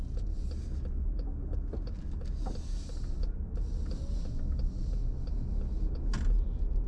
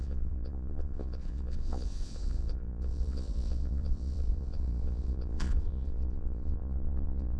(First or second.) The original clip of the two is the first